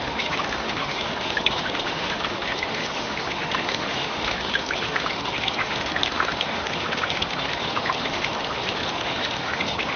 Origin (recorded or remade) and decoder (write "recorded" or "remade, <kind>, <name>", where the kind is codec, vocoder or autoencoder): remade, autoencoder, DAC-VAE